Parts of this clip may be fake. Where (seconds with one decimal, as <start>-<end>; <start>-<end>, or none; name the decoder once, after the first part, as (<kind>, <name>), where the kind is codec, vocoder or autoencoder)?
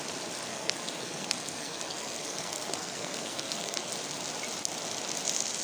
0.5-3.9 (codec, SNAC)